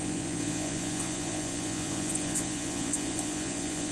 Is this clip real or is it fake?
fake